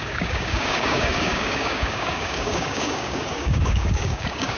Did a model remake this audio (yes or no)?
yes